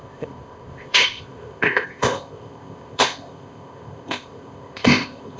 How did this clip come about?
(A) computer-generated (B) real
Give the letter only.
A